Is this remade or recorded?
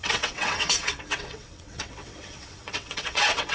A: remade